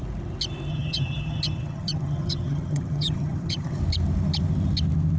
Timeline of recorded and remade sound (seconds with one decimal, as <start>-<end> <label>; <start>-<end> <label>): 0.0-0.7 recorded; 0.7-3.8 remade; 3.8-5.2 recorded